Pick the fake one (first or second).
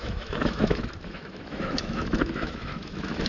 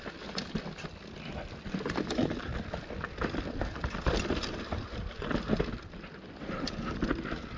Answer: first